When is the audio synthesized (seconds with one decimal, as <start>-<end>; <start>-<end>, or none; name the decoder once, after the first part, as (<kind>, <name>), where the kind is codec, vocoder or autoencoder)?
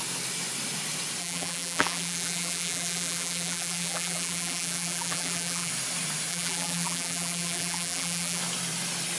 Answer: 1.2-5.7 (vocoder, BigVGAN v2); 6.3-8.4